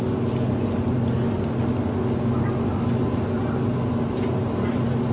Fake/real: real